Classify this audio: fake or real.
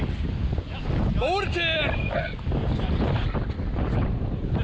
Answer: real